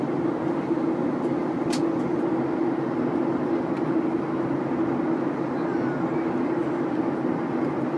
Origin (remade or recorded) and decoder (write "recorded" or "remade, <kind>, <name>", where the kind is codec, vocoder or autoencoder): recorded